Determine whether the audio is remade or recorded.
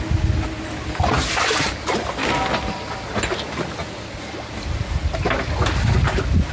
recorded